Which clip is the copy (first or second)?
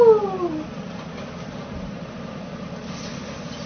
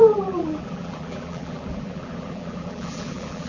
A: second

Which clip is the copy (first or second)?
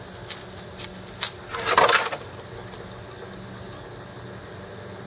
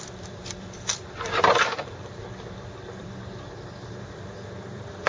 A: second